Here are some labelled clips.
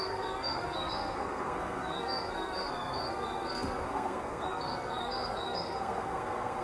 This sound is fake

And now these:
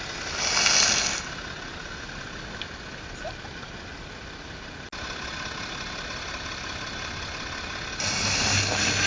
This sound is real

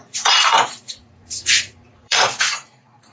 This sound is fake